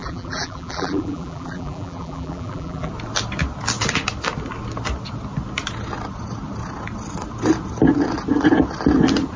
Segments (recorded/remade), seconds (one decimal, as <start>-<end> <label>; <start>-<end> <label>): 0.0-2.9 remade; 2.9-9.4 recorded